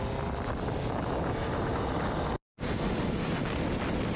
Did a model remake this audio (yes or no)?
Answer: no